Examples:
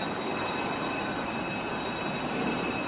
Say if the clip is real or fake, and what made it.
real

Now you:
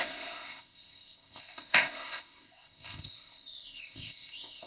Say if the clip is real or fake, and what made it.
fake, codec, ZipCodec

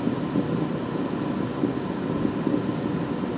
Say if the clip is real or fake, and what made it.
real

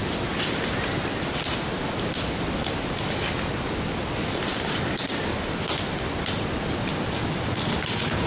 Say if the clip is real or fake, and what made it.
real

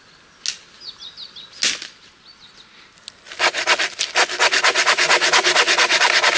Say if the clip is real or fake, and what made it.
real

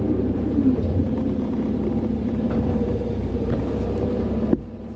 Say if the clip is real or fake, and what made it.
fake, vocoder, BigVGAN v2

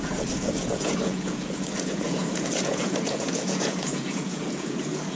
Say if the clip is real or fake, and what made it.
fake, vocoder, Vocos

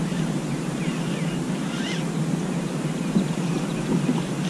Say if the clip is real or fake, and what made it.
real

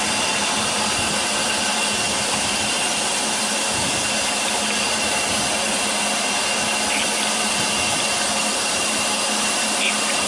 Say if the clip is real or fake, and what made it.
real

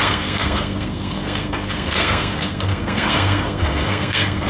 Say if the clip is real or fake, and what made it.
fake, codec, SNAC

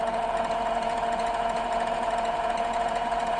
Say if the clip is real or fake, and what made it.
fake, vocoder, Vocos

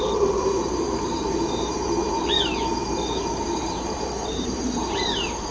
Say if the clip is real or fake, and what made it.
fake, vocoder, BigVGAN v2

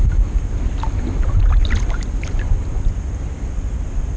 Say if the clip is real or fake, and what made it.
real